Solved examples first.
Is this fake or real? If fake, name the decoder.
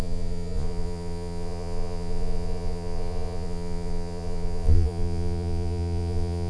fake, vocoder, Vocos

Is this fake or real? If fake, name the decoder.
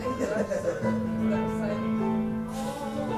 real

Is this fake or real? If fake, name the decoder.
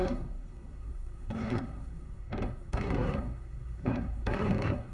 fake, codec, SNAC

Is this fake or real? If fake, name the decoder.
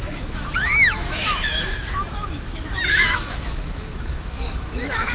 fake, autoencoder, DAC-VAE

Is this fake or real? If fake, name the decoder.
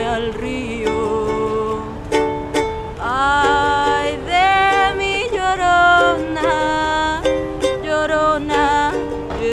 real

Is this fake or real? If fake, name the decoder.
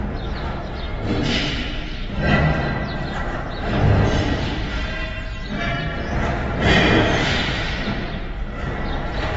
real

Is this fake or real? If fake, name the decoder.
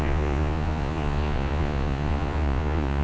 fake, vocoder, Vocos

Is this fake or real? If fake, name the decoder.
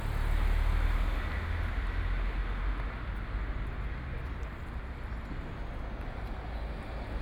real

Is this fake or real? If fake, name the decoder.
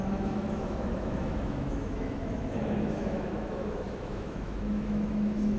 fake, autoencoder, DAC-VAE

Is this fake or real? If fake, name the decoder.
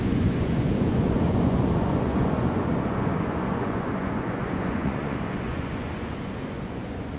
fake, vocoder, Vocos